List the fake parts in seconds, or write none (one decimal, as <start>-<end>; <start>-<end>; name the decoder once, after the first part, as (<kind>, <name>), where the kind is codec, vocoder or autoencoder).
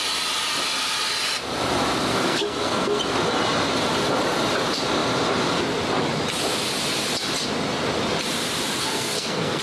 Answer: 2.1-3.0 (codec, SNAC); 8.8-9.6